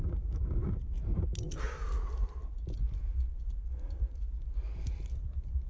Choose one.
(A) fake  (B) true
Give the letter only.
B